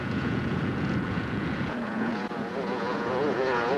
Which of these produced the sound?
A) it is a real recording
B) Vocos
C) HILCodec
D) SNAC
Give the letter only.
B